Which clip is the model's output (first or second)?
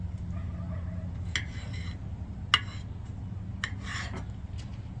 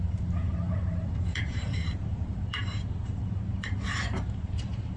second